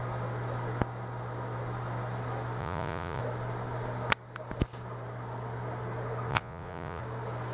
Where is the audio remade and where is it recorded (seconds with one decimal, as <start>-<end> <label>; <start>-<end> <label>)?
0.0-2.6 recorded; 2.6-3.2 remade; 3.2-6.3 recorded; 6.3-7.0 remade; 7.0-7.5 recorded